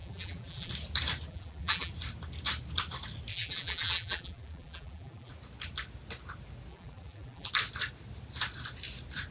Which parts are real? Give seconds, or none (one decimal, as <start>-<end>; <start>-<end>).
0.7-1.3; 1.9-3.3; 5.3-6.7; 7.5-9.3